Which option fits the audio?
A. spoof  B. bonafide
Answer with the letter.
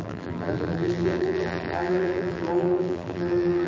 A